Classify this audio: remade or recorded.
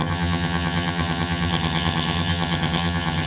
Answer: remade